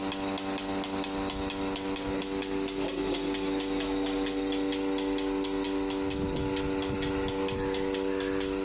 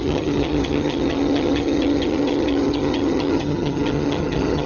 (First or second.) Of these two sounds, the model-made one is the second